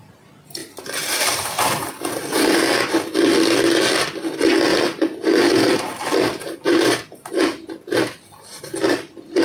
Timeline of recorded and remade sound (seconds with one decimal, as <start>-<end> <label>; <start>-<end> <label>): 0.0-0.6 recorded; 0.6-1.9 remade; 1.9-4.7 recorded; 4.7-7.3 remade; 7.3-9.4 recorded